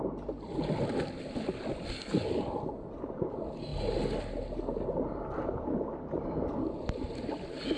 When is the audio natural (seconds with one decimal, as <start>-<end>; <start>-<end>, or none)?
0.0-7.8